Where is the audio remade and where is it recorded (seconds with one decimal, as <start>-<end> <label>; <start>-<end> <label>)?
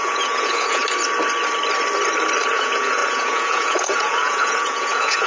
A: 0.0-0.8 remade; 0.8-2.5 recorded; 2.5-5.3 remade